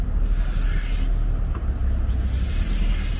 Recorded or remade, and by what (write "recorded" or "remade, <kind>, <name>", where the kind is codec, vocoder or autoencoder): recorded